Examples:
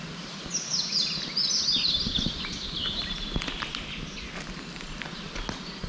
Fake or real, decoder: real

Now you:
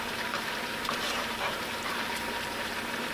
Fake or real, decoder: fake, vocoder, BigVGAN v2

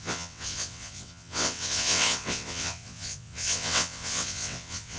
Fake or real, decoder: fake, vocoder, WaveNeXt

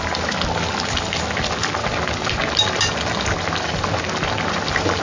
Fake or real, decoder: real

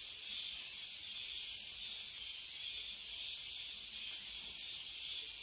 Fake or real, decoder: real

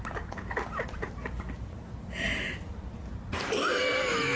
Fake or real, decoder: real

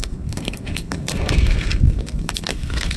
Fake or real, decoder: fake, codec, SNAC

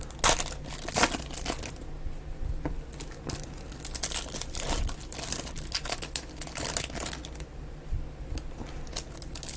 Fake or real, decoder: real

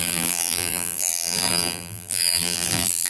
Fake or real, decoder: fake, vocoder, BigVGAN v2